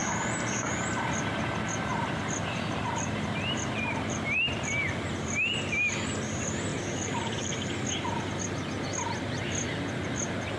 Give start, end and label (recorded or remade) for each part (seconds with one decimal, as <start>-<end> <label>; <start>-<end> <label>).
0.0-0.5 remade; 0.5-1.9 recorded; 1.9-5.0 remade; 5.0-6.7 recorded; 6.7-7.7 remade; 7.7-10.6 recorded